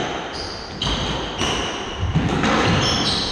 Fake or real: real